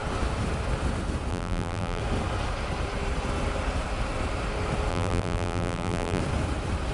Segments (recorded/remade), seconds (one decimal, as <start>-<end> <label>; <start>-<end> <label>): 0.0-1.3 recorded; 1.3-2.0 remade; 2.0-4.9 recorded; 4.9-6.2 remade; 6.2-6.9 recorded